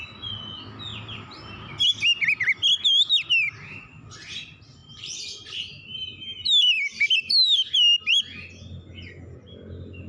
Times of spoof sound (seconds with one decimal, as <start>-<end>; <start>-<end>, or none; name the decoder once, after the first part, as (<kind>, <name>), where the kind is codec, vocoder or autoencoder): 0.9-1.7 (vocoder, BigVGAN v2); 4.8-6.4